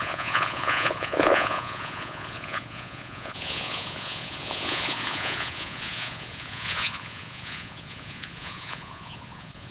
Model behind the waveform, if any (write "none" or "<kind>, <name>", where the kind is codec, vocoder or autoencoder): vocoder, Vocos